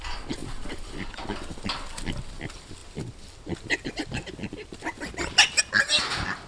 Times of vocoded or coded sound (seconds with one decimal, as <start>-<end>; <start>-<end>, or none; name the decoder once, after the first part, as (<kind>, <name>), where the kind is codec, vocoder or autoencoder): none